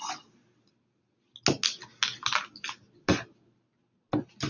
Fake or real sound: real